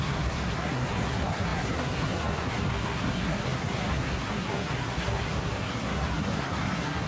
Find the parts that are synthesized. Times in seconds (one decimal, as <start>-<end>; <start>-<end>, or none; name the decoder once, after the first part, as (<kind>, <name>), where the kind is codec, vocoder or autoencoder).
0.0-7.1 (codec, SNAC)

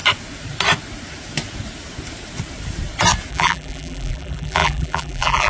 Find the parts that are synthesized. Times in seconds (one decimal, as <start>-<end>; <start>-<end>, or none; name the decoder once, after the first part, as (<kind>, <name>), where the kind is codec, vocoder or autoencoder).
3.3-5.5 (vocoder, BigVGAN v2)

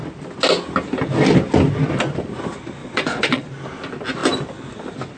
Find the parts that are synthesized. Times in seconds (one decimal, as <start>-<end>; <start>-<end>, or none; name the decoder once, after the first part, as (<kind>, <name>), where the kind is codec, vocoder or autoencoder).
2.8-3.5 (vocoder, Vocos)

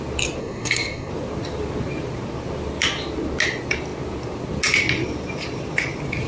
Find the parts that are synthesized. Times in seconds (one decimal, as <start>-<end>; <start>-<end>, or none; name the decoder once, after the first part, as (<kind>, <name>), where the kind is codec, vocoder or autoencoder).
0.4-1.1 (codec, SNAC)

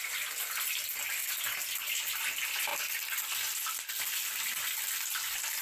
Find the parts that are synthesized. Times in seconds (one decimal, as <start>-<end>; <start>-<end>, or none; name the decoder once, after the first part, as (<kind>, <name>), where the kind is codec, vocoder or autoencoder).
none